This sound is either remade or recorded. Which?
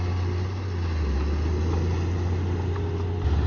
recorded